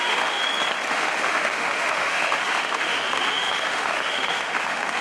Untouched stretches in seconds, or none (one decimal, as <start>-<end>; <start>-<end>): 0.4-0.9